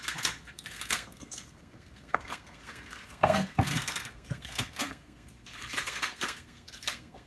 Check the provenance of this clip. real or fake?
fake